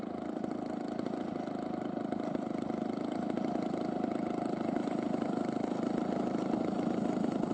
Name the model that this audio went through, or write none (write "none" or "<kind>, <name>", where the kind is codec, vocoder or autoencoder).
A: none